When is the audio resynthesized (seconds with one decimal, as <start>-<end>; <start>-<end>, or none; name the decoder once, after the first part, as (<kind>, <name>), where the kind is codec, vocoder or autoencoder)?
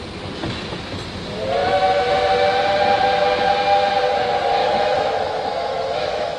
1.6-2.1 (autoencoder, DAC-VAE); 4.6-6.4